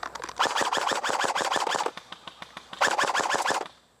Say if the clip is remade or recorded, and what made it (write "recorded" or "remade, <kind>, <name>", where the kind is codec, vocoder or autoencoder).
remade, vocoder, BigVGAN v2